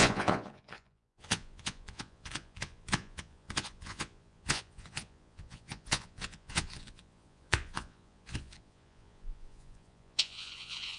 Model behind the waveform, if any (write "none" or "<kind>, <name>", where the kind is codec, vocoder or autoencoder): vocoder, Vocos